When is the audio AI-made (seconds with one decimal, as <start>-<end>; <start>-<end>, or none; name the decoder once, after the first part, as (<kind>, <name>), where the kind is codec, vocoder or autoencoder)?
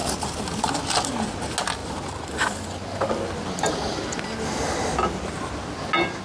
none